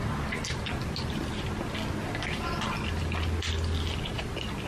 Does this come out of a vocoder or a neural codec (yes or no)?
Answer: no